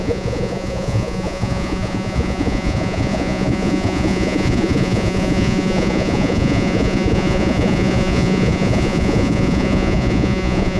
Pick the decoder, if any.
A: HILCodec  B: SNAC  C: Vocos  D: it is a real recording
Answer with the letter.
C